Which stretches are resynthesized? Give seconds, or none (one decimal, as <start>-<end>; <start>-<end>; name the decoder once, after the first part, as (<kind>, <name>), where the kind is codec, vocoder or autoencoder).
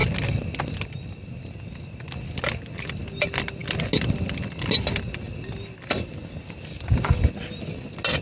none